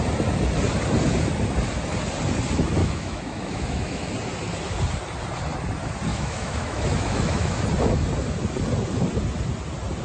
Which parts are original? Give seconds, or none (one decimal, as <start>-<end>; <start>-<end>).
0.0-2.8; 4.1-6.1; 7.6-10.0